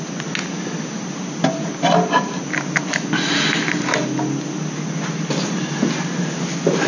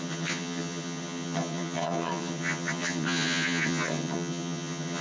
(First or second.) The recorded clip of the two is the first